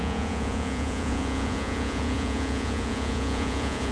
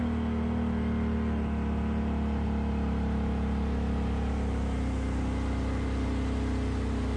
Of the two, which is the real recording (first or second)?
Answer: second